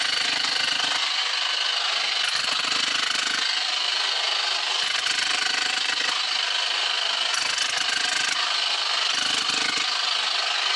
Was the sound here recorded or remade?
recorded